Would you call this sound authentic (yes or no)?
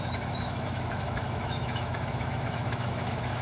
no